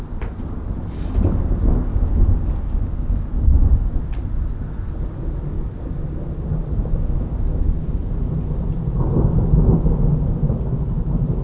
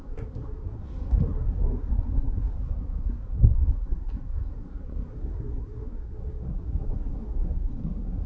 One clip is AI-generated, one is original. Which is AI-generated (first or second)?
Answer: second